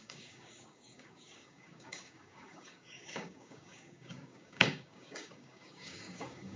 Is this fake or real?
fake